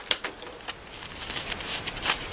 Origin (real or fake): real